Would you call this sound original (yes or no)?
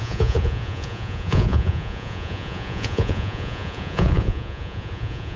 no